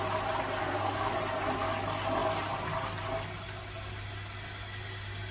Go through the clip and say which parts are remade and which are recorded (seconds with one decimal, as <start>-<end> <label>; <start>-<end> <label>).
0.0-0.6 recorded; 0.6-1.1 remade; 1.1-5.3 recorded

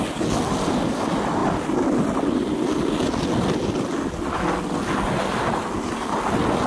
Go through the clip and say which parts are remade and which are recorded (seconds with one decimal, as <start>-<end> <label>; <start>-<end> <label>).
0.0-6.7 recorded

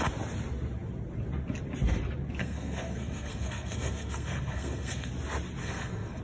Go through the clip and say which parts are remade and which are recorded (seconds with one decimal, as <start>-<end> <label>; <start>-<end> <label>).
0.0-2.4 recorded; 2.4-5.1 remade; 5.1-5.6 recorded; 5.6-6.2 remade

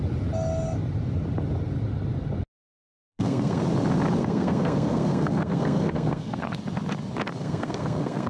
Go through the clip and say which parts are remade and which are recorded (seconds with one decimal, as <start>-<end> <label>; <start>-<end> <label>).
0.0-2.9 recorded; 2.9-3.6 remade; 3.6-4.2 recorded; 4.2-6.6 remade; 6.6-7.4 recorded; 7.4-8.3 remade

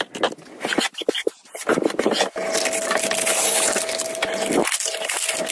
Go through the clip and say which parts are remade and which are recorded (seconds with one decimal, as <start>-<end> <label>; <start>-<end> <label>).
0.0-5.5 recorded

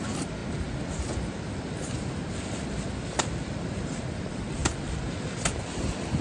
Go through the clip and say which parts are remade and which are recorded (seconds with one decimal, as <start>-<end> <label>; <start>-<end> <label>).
0.0-6.2 recorded

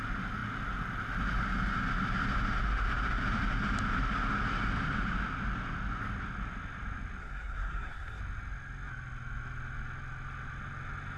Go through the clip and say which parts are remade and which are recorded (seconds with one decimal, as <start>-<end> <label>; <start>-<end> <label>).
0.0-7.2 recorded; 7.2-8.2 remade; 8.2-11.2 recorded

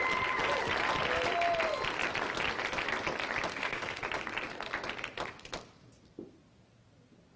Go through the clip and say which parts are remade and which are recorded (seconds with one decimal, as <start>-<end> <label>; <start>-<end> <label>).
0.0-3.5 recorded; 3.5-4.0 remade; 4.0-7.4 recorded